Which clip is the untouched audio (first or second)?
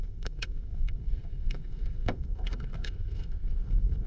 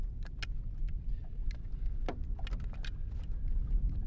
second